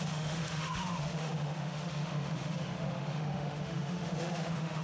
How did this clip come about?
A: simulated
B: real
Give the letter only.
A